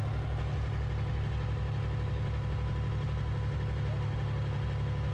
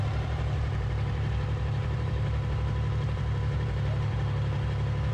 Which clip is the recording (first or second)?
first